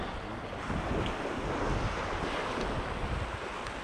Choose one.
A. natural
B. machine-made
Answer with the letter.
A